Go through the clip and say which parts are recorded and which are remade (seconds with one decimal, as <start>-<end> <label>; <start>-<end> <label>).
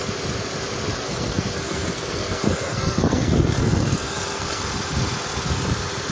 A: 0.0-0.9 recorded; 0.9-4.6 remade; 4.6-6.1 recorded